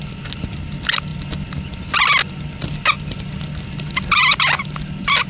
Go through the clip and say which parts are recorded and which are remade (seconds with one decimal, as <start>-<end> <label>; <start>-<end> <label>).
0.0-5.3 recorded